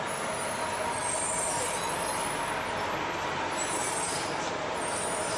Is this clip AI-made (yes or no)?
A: no